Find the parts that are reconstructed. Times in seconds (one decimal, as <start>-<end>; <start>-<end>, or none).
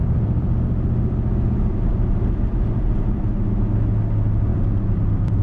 0.0-3.2; 4.5-5.4